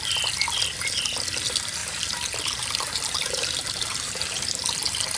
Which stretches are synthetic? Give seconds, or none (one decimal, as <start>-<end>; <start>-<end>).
1.8-4.4